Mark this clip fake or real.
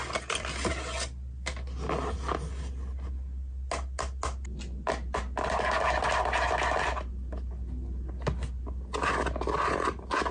real